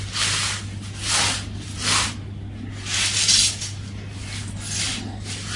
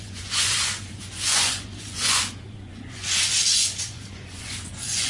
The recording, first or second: first